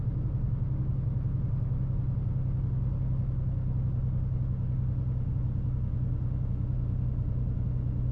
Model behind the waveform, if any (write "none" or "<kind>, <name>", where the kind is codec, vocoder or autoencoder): none